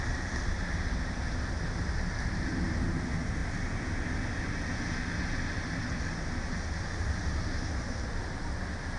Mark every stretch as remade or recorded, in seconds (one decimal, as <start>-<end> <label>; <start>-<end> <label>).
0.0-9.0 recorded

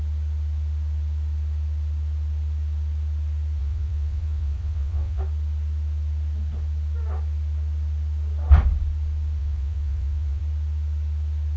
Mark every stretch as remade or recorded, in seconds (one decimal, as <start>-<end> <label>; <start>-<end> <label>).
0.0-3.6 recorded; 3.6-5.2 remade; 5.2-9.4 recorded; 9.4-10.4 remade; 10.4-11.6 recorded

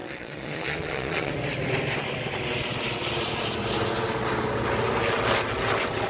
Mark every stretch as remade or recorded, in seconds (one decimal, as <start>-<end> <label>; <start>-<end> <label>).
0.0-1.3 remade; 1.3-6.1 recorded

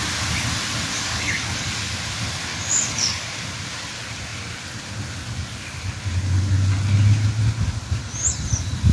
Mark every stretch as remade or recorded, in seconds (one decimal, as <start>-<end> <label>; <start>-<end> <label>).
0.0-0.9 recorded; 0.9-1.8 remade; 1.8-2.5 recorded; 2.5-3.3 remade; 3.3-8.9 recorded

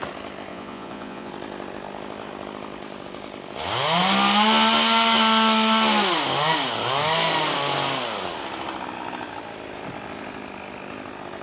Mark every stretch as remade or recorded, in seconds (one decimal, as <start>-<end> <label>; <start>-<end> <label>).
0.0-0.5 recorded; 0.5-1.3 remade; 1.3-11.4 recorded